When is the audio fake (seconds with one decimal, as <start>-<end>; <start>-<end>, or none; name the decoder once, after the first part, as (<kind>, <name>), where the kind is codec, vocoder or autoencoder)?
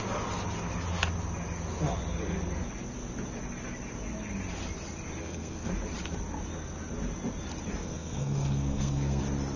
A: 5.2-5.7 (codec, SNAC); 7.8-9.2